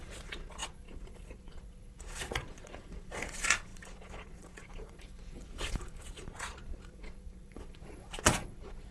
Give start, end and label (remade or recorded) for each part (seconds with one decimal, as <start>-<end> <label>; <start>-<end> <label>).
0.0-8.9 remade